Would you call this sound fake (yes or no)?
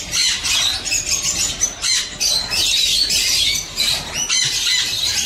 no